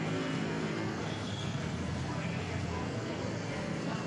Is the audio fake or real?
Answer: fake